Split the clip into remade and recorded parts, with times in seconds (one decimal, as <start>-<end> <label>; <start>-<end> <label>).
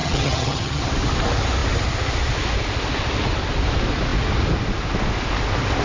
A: 0.0-0.8 remade; 0.8-5.8 recorded